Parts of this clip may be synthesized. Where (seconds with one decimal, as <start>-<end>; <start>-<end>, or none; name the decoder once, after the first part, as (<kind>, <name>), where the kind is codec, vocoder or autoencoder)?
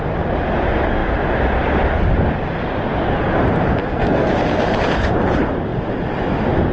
3.8-4.3 (codec, SNAC)